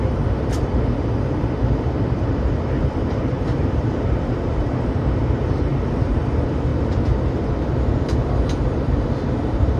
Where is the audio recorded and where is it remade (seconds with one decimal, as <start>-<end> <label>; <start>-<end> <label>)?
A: 0.0-9.8 remade